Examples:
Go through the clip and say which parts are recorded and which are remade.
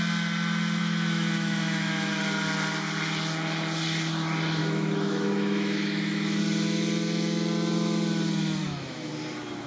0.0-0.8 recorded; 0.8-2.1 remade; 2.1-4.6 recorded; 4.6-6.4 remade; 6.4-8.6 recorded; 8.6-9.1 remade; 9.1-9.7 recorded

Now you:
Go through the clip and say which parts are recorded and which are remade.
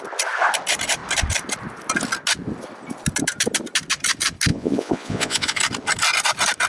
0.0-4.5 recorded; 4.5-5.6 remade; 5.6-6.7 recorded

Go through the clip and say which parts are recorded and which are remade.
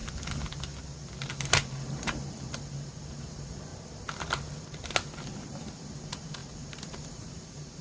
0.0-1.3 recorded; 1.3-3.7 remade; 3.7-5.4 recorded; 5.4-7.8 remade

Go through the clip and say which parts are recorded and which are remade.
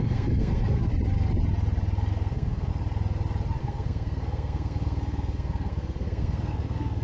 0.0-0.9 remade; 0.9-2.1 recorded; 2.1-2.7 remade; 2.7-3.6 recorded; 3.6-7.0 remade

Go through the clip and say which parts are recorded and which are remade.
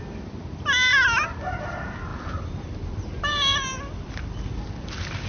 0.0-2.1 recorded; 2.1-5.3 remade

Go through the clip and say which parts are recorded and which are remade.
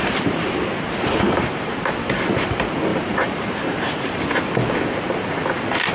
0.0-1.8 remade; 1.8-2.9 recorded; 2.9-4.2 remade; 4.2-5.9 recorded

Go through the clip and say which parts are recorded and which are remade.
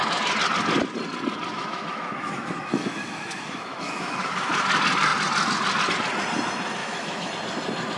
0.0-1.5 recorded; 1.5-4.5 remade; 4.5-6.8 recorded; 6.8-7.3 remade; 7.3-8.0 recorded